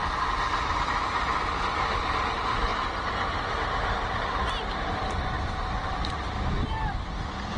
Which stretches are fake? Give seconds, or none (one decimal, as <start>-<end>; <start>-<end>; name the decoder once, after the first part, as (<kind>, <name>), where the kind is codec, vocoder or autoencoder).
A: 0.6-2.7 (vocoder, BigVGAN v2); 4.9-7.6